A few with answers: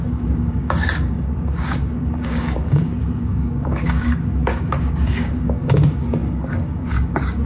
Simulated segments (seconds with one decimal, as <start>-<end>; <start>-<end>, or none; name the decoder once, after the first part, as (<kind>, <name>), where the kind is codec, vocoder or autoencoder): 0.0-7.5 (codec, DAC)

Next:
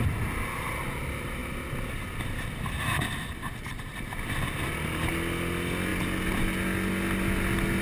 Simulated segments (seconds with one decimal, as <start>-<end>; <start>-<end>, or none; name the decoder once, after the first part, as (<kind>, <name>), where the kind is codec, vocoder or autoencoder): 2.9-4.1 (vocoder, BigVGAN v2)

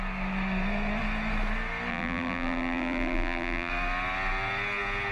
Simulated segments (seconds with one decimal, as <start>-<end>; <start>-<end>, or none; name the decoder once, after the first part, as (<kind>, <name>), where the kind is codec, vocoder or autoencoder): 1.9-3.7 (vocoder, BigVGAN v2)

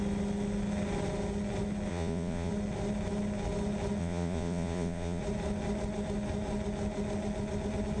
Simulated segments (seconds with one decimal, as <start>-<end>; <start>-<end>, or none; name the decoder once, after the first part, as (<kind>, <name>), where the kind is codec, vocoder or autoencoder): 1.9-2.5 (vocoder, Vocos); 4.0-5.2